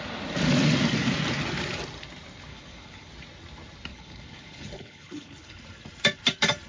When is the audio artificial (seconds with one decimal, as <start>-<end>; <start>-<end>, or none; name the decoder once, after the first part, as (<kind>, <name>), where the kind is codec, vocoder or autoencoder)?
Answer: 2.5-3.1 (codec, HILCodec); 3.9-5.6